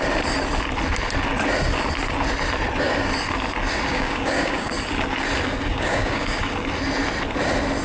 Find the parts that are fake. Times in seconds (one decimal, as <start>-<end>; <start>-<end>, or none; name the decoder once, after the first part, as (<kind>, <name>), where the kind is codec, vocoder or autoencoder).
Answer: 3.9-4.7 (codec, DAC); 5.7-6.4